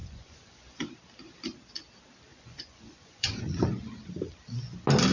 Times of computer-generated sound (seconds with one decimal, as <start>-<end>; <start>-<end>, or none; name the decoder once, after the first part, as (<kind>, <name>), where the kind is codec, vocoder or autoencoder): 0.0-0.9 (vocoder, Vocos); 2.3-3.4